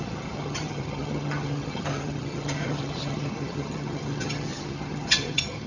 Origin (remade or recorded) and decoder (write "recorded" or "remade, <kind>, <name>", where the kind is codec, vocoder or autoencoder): remade, vocoder, HiFi-GAN